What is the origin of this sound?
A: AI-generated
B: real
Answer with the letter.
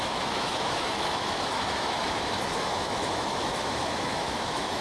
A